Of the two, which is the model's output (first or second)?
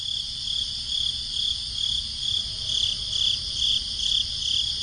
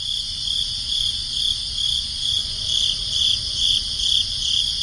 second